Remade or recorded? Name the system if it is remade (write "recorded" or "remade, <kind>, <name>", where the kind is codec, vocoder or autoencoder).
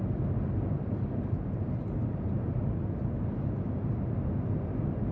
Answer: recorded